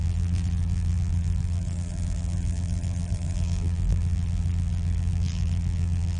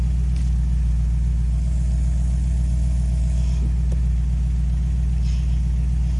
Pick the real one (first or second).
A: second